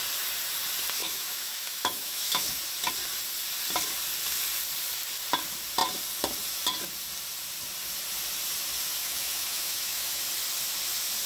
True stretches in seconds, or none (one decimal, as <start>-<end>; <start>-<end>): 0.0-1.0; 2.6-9.0; 10.2-11.3

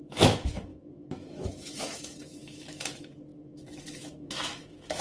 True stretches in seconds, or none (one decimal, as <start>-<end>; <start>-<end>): none

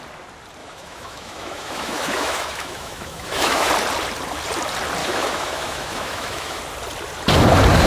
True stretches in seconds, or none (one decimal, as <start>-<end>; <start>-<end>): 0.0-0.6; 3.7-5.0; 6.6-7.9

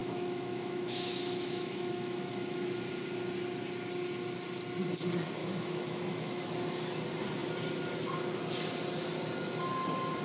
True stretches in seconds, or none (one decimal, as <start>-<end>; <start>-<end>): 2.9-5.4; 6.5-10.2

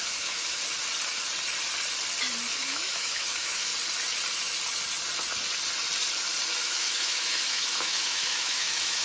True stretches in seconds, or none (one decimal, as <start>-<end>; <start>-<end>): 0.6-2.5; 3.7-6.6